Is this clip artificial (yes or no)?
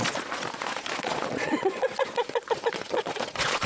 yes